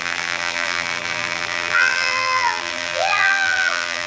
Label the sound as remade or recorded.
remade